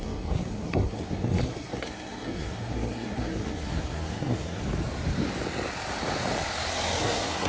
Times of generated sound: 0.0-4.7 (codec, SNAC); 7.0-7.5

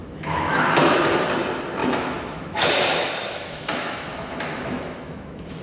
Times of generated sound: 0.0-1.0 (autoencoder, DAC-VAE); 1.8-5.6

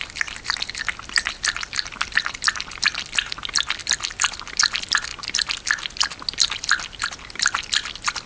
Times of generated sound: none

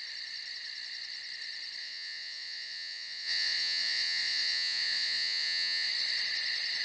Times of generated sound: 1.8-5.9 (vocoder, Vocos)

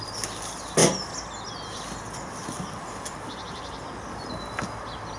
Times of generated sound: none

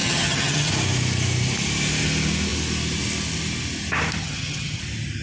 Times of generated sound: 0.0-0.7 (vocoder, HiFi-GAN); 4.2-4.8